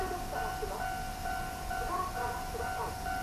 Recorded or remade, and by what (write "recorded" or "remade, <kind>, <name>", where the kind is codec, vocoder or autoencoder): recorded